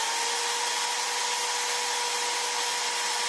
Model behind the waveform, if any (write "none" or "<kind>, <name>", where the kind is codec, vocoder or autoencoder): none